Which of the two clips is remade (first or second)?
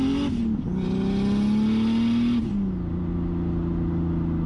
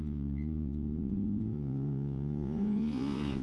second